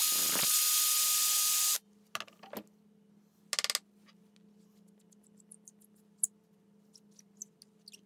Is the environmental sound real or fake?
real